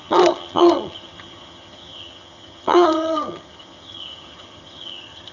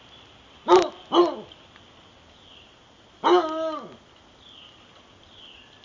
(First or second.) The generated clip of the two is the first